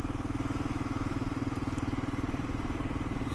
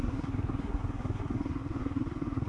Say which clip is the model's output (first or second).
second